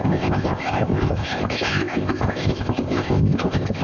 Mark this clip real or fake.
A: fake